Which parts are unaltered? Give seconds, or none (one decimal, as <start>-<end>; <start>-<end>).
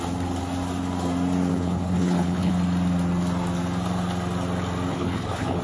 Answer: 0.0-1.5; 2.5-4.9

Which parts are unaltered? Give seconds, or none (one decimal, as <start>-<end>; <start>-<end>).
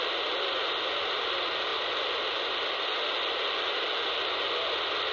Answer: 0.0-5.1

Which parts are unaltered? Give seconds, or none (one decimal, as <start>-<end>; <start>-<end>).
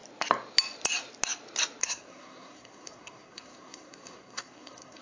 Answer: 0.0-1.8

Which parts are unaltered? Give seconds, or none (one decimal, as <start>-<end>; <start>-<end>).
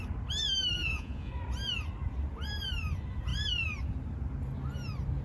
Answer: 0.0-0.8; 1.3-5.2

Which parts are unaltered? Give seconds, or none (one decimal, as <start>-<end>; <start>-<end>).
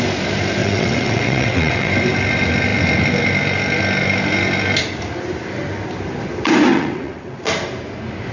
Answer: 0.0-0.6; 1.9-6.7; 7.4-8.3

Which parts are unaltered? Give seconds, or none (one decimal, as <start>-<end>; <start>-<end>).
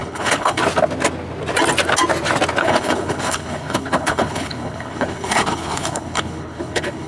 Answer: 0.6-2.6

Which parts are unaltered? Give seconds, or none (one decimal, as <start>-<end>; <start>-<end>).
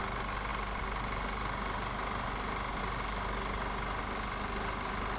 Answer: 0.0-5.2